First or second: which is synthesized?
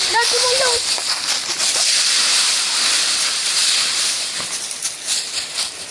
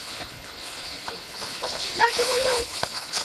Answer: second